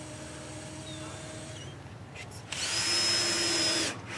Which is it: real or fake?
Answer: real